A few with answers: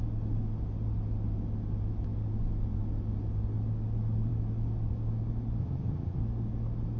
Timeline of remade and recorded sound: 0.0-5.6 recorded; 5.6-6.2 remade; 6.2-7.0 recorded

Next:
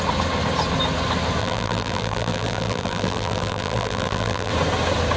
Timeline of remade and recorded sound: 0.0-1.4 recorded; 1.4-4.5 remade; 4.5-5.2 recorded

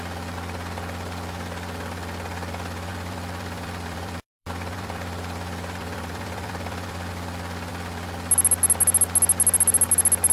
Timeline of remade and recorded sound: 0.0-2.9 recorded; 2.9-7.1 remade; 7.1-10.3 recorded